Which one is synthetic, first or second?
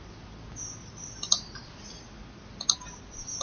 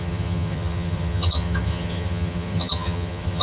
second